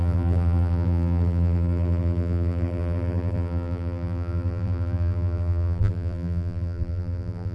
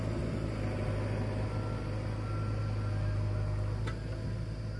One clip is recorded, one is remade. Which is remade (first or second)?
first